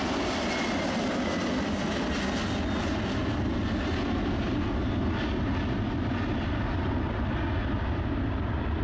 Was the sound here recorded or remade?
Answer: recorded